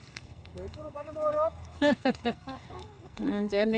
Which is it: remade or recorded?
remade